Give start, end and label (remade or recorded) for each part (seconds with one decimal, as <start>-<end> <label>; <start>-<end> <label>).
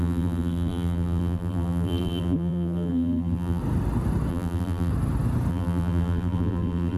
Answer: 0.0-3.6 remade; 3.6-4.3 recorded; 4.3-4.9 remade; 4.9-5.5 recorded; 5.5-7.0 remade